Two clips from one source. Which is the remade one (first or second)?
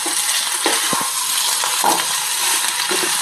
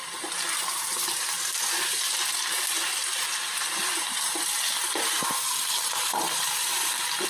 second